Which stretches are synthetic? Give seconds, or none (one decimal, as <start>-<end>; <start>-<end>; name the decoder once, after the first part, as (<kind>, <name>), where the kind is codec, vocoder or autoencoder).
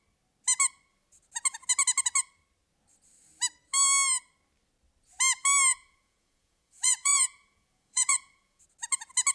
5.7-8.6 (vocoder, Vocos)